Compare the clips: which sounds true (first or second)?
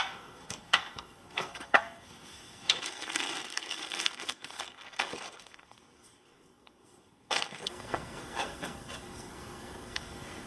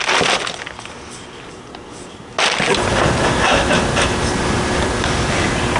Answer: second